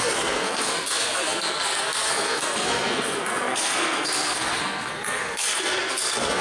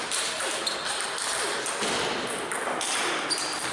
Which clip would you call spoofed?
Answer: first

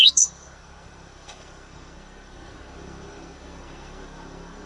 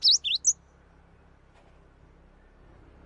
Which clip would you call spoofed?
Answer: first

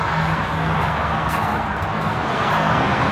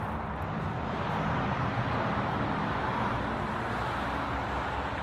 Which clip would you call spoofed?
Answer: first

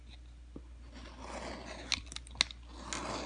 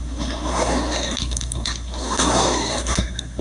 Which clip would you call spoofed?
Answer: second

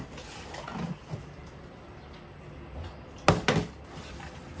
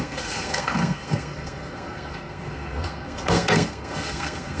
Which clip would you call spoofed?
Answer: second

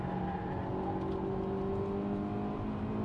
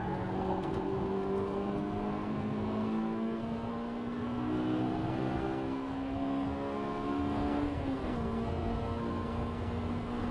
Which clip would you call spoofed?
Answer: second